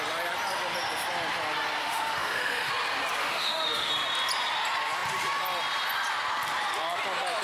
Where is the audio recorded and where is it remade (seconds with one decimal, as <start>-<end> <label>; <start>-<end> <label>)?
0.0-1.8 recorded; 1.8-2.7 remade; 2.7-3.2 recorded; 3.2-3.9 remade; 3.9-7.4 recorded